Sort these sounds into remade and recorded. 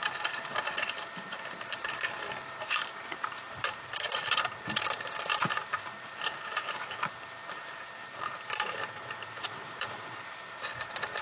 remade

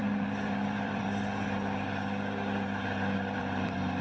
remade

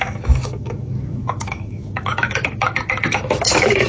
remade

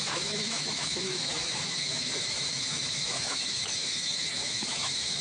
remade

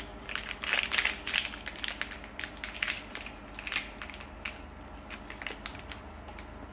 recorded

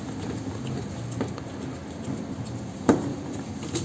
recorded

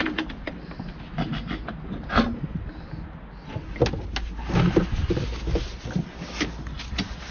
recorded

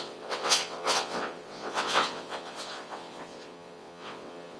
remade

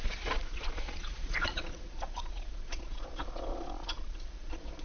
remade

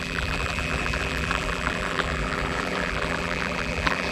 remade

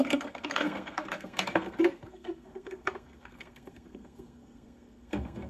remade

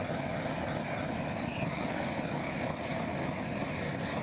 recorded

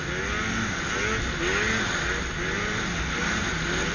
recorded